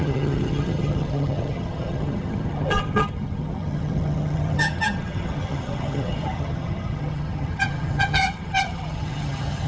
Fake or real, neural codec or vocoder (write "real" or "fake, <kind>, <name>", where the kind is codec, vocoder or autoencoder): fake, vocoder, HiFi-GAN